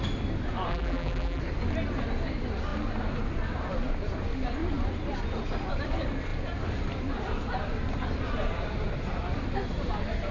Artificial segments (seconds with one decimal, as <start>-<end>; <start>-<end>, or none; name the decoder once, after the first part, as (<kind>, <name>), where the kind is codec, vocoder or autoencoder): 0.7-1.4 (vocoder, BigVGAN v2)